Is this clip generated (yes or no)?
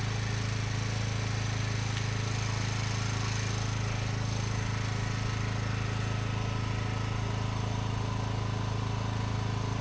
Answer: no